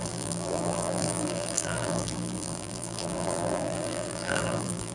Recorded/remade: remade